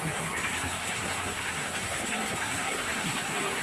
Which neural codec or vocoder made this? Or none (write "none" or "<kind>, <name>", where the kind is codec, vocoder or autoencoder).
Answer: codec, SNAC